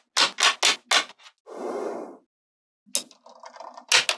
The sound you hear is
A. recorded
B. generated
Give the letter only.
A